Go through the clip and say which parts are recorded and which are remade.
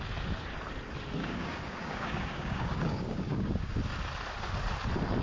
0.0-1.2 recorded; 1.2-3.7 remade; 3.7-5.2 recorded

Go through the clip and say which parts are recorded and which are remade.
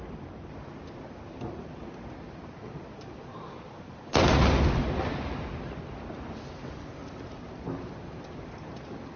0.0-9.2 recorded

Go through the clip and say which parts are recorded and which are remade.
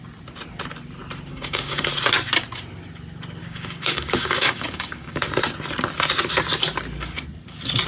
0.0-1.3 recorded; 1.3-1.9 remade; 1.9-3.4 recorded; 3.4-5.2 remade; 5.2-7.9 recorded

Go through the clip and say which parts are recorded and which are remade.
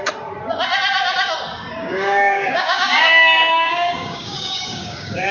0.0-1.8 recorded; 1.8-5.3 remade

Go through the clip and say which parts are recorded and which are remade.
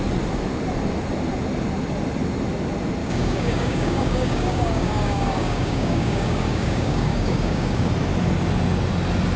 0.0-3.0 recorded; 3.0-7.9 remade; 7.9-9.4 recorded